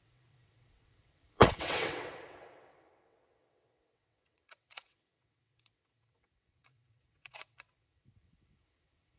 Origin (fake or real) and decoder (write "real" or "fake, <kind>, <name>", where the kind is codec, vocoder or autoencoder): fake, vocoder, WaveNeXt